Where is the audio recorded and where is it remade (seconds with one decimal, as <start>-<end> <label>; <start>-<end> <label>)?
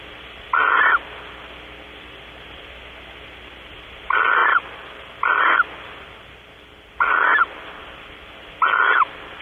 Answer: 0.0-9.4 recorded